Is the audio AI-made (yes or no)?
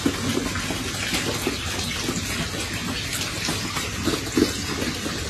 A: no